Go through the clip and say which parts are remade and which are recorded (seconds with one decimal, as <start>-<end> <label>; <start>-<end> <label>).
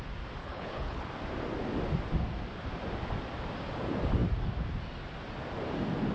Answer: 0.0-0.4 recorded; 0.4-1.1 remade; 1.1-6.1 recorded